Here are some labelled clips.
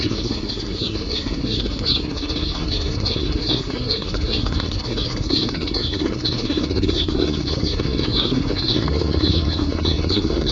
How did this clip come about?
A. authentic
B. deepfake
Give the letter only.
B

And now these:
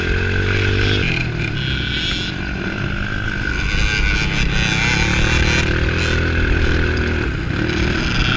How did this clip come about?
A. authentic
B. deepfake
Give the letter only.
A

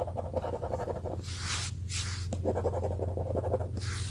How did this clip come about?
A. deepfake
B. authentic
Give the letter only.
B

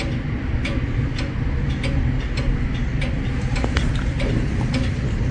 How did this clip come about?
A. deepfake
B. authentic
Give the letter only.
B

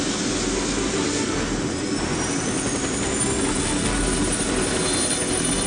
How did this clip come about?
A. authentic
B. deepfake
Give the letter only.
A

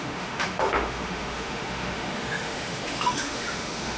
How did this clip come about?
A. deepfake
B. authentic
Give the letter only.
A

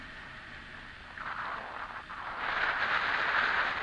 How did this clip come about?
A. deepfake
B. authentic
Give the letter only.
B